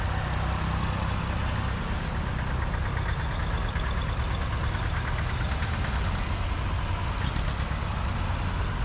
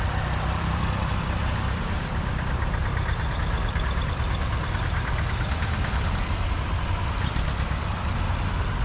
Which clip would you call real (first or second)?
first